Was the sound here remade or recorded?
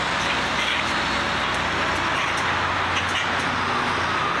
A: recorded